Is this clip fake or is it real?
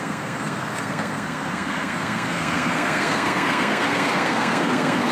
fake